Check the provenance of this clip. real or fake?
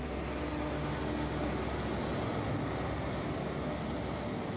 real